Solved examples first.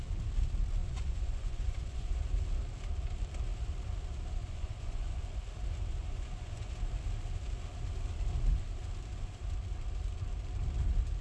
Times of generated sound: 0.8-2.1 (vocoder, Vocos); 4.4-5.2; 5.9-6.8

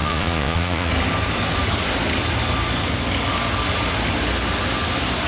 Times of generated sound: 0.0-0.9 (vocoder, Vocos)